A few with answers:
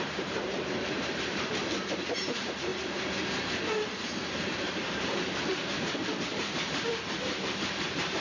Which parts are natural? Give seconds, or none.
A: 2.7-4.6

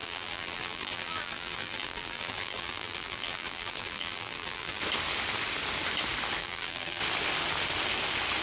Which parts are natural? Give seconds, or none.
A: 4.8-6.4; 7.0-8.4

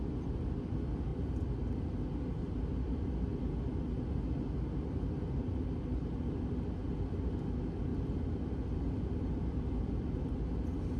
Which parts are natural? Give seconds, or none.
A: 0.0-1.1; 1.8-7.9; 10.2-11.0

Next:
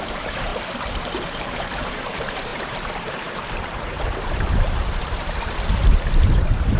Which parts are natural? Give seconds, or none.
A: 0.5-1.1

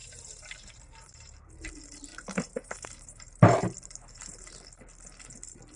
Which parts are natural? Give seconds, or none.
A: 1.5-2.1; 4.2-5.8

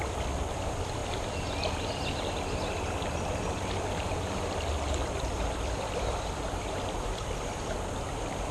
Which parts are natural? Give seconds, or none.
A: 1.0-2.9

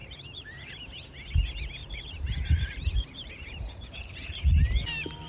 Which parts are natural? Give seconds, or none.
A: 0.7-1.8

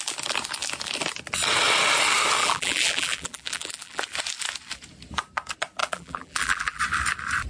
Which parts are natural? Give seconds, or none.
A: 0.0-2.4; 4.0-5.8; 6.8-7.5